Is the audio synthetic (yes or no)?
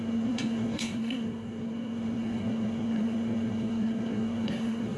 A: yes